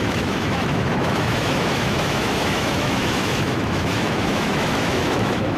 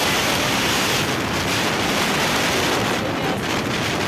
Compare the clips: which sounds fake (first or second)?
first